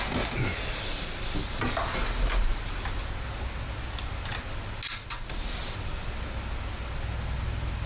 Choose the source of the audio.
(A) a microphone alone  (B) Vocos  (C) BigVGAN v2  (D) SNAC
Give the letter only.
A